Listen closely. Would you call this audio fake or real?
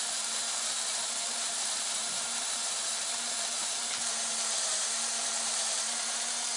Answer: fake